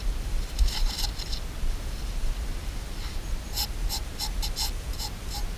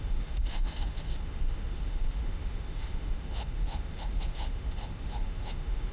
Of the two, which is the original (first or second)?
first